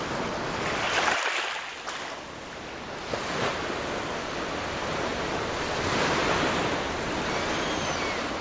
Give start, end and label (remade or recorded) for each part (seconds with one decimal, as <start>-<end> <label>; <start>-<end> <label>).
0.0-8.4 recorded